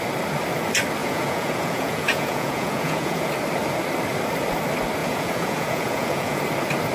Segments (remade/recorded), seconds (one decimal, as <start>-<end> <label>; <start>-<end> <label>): 0.0-1.0 recorded; 1.0-3.3 remade; 3.3-5.0 recorded; 5.0-6.4 remade; 6.4-6.9 recorded